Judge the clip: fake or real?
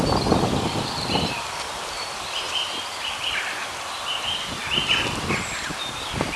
real